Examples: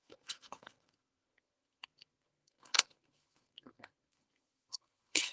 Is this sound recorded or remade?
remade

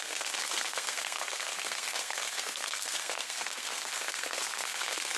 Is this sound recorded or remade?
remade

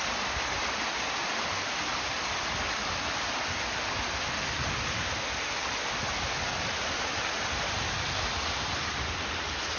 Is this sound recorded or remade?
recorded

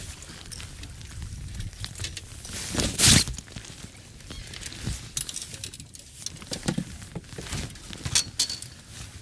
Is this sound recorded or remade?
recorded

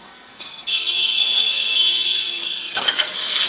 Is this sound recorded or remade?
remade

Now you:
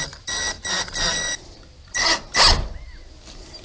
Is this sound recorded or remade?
recorded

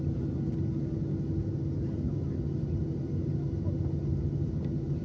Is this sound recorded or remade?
recorded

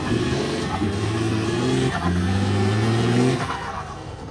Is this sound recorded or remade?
remade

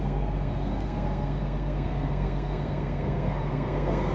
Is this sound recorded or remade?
remade